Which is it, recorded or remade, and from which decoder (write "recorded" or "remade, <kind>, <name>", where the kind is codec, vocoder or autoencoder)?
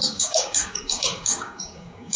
remade, codec, DAC